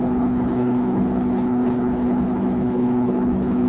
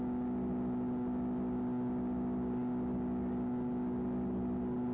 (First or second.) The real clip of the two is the second